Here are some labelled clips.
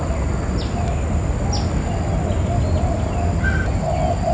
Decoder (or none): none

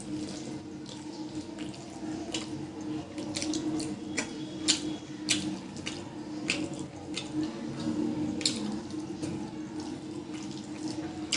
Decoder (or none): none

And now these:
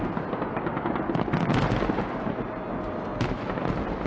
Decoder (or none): none